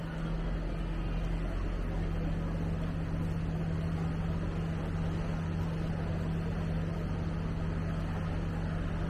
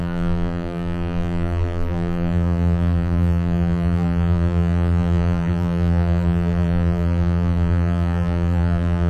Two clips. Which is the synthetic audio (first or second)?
second